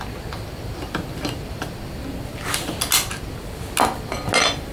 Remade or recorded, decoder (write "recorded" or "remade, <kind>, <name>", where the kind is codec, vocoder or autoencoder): recorded